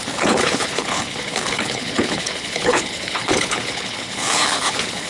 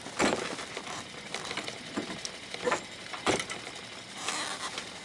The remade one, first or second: first